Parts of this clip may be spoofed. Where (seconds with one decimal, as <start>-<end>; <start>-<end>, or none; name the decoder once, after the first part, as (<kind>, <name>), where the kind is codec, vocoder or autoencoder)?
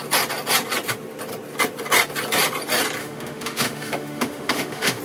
3.0-5.0 (autoencoder, DAC-VAE)